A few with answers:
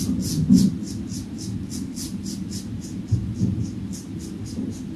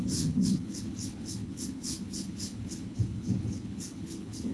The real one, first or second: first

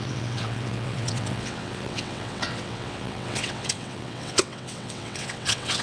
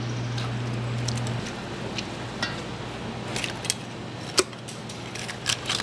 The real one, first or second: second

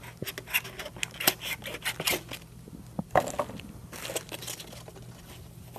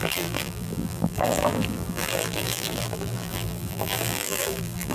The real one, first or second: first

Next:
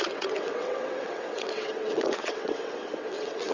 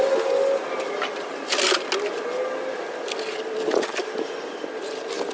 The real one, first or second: second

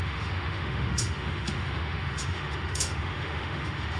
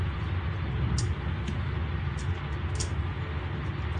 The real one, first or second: second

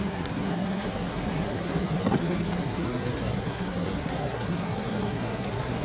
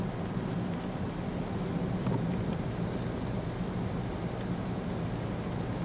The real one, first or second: second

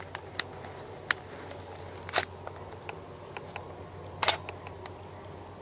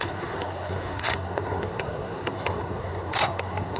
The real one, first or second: first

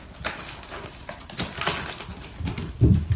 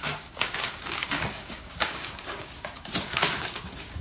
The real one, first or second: first